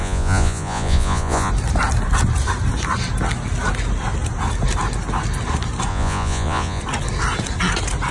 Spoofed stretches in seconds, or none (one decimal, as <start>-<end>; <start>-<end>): 0.0-1.5; 5.9-6.8